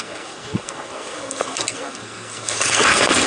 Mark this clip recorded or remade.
remade